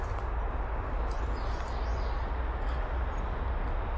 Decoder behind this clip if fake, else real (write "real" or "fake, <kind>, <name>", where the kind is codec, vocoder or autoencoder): real